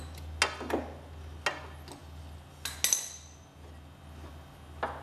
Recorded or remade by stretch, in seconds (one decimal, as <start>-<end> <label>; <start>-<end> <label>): 0.0-5.0 recorded

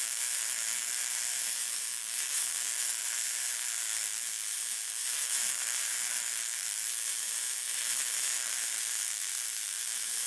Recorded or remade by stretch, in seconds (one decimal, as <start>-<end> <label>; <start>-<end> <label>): 0.0-10.3 remade